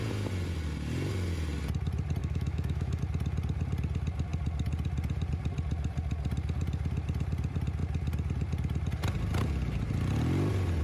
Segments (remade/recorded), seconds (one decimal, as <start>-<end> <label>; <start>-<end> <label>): 0.0-2.2 recorded; 2.2-3.0 remade; 3.0-10.8 recorded